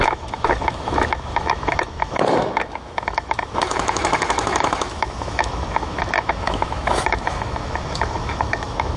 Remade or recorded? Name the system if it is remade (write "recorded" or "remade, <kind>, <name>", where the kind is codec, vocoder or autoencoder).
remade, autoencoder, DAC-VAE